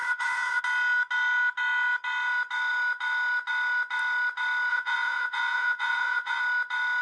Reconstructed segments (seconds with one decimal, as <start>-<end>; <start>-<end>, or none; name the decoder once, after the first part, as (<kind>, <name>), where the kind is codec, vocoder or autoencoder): 0.0-0.6 (vocoder, Vocos); 4.7-6.4